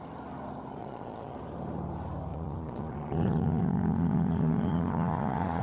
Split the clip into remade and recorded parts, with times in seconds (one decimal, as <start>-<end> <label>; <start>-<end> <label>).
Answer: 0.0-0.8 recorded; 0.8-1.4 remade; 1.4-2.3 recorded; 2.3-5.6 remade